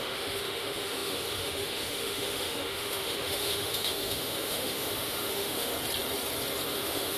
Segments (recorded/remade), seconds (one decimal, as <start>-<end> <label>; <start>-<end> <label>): 0.0-5.7 remade; 5.7-6.7 recorded; 6.7-7.2 remade